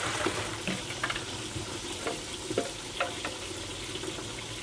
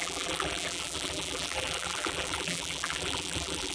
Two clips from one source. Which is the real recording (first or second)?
first